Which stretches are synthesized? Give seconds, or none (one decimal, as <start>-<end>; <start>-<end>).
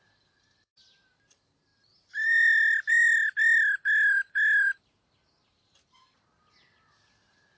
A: none